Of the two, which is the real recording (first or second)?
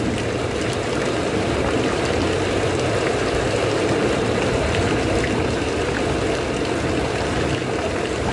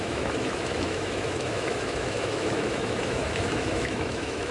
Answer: first